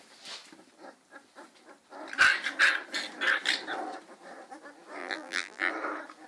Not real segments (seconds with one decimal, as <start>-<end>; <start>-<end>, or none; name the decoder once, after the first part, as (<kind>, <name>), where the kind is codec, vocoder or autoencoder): 5.0-5.7 (vocoder, BigVGAN v2)